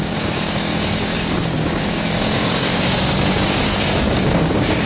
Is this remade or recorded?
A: remade